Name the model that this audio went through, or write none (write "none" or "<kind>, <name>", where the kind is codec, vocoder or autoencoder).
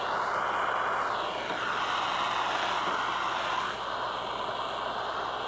none